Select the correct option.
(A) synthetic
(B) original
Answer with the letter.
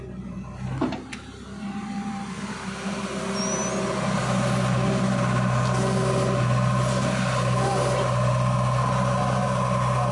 B